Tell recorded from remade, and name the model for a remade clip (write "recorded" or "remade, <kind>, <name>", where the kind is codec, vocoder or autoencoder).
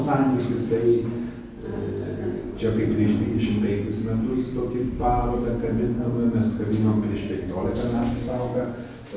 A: recorded